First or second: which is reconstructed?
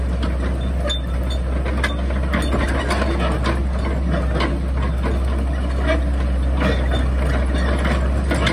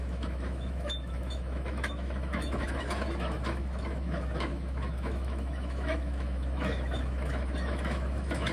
second